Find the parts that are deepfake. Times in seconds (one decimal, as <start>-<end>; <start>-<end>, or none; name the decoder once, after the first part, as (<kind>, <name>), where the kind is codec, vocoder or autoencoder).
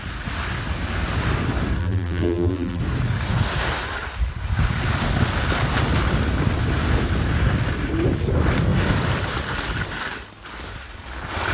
1.8-2.8 (vocoder, BigVGAN v2)